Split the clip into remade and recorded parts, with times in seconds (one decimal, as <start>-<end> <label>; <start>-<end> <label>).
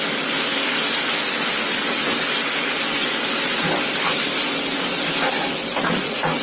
0.0-5.7 recorded; 5.7-6.4 remade